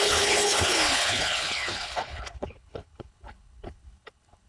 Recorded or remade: remade